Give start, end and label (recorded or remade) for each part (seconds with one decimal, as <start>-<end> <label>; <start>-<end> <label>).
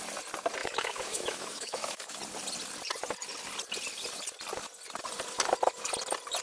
0.0-0.6 recorded; 0.6-2.2 remade; 2.2-6.4 recorded